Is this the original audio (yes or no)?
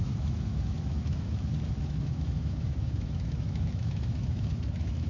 no